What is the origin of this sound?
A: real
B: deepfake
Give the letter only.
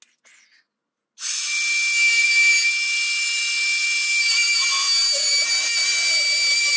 A